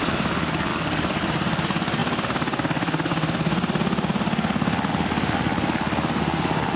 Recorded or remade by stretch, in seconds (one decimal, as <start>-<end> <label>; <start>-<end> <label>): 0.0-0.7 recorded; 0.7-1.2 remade; 1.2-6.8 recorded